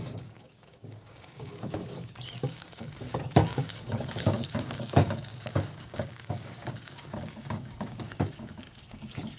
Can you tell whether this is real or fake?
fake